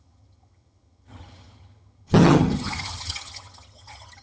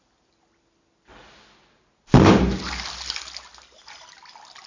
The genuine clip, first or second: second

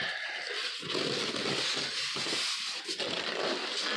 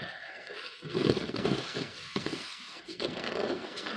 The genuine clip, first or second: first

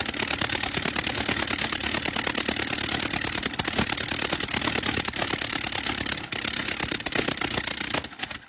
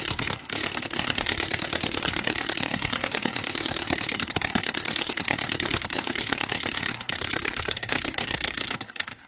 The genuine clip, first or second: first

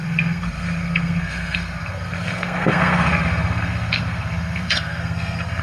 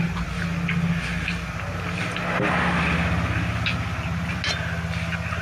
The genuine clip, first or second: second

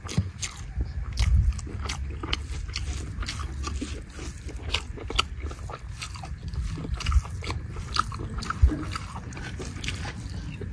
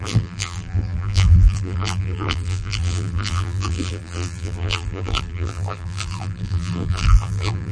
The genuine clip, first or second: first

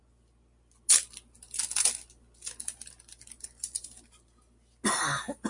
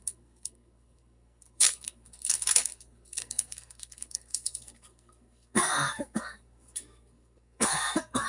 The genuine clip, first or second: first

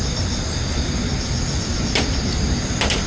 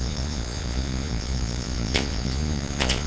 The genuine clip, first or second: first